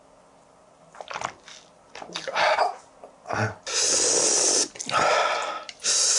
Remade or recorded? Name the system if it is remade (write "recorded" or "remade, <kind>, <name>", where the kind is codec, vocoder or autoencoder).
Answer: recorded